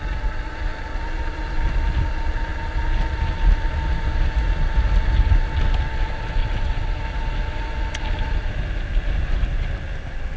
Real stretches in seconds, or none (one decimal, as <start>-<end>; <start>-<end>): 0.0-6.4; 6.9-10.4